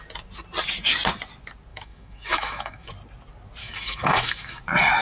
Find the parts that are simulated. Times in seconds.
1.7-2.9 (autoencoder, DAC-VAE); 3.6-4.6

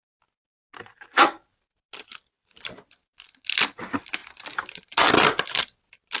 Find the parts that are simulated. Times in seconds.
none

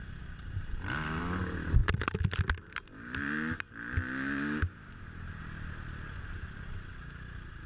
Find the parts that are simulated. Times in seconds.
none

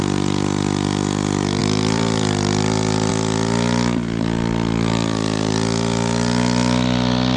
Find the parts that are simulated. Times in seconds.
1.6-3.1 (vocoder, BigVGAN v2)

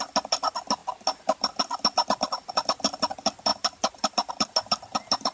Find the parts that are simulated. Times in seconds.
3.5-4.5 (vocoder, BigVGAN v2)

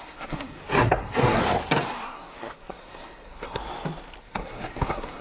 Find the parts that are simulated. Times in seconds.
0.0-1.4 (codec, SNAC); 1.9-3.6; 4.2-5.2

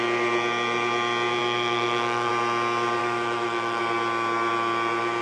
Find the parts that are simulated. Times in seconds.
1.4-2.3 (autoencoder, DAC-VAE); 3.0-3.8

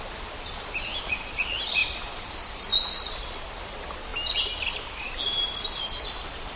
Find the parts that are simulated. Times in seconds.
none